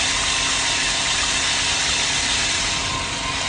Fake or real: real